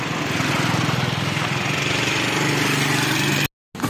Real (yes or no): yes